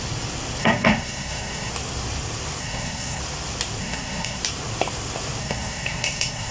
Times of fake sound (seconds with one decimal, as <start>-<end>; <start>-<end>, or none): 0.6-1.7; 2.6-3.2; 3.8-4.4; 5.4-6.5